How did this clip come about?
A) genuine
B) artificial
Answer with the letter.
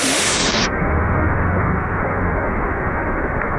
B